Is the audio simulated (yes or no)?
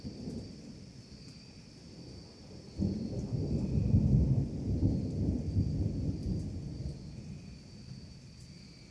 no